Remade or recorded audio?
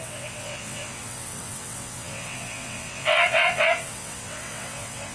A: remade